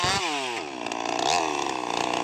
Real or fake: real